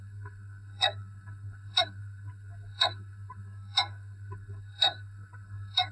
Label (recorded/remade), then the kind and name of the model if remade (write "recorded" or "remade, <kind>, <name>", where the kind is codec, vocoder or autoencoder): remade, codec, SNAC